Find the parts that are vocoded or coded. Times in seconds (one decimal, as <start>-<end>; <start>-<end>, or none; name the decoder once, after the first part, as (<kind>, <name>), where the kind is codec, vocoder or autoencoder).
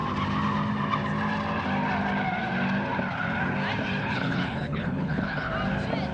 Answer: 4.0-5.5 (codec, HILCodec)